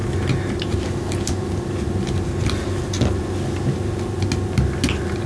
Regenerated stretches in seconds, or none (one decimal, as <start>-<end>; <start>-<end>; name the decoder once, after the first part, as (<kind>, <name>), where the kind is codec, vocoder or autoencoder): none